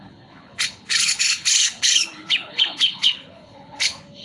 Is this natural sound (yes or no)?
no